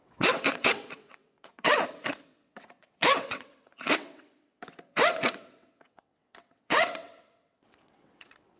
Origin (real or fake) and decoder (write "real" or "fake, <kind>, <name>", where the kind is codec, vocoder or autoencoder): fake, vocoder, WaveNeXt